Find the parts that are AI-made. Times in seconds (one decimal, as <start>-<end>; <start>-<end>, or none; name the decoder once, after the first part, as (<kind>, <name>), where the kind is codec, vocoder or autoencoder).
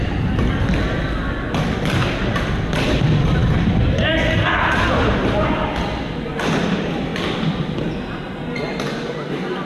none